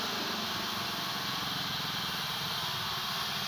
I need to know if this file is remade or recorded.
recorded